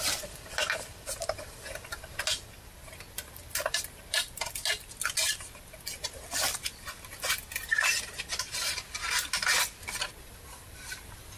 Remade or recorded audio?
recorded